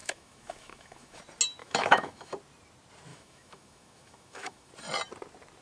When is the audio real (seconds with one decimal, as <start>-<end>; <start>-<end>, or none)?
1.2-1.6; 2.3-3.1; 4.7-5.6